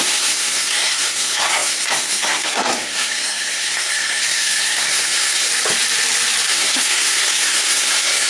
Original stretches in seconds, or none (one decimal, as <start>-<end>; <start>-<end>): 5.5-6.5